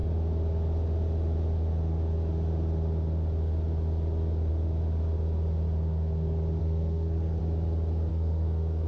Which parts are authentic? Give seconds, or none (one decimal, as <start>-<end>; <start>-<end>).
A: 0.0-6.6; 7.4-8.1